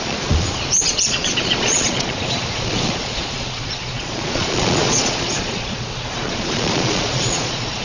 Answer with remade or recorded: remade